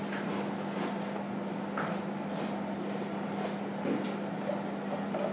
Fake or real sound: real